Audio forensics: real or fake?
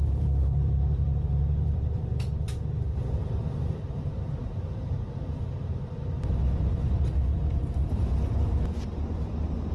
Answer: fake